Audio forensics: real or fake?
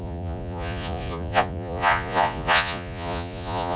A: fake